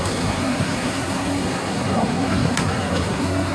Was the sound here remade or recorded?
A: remade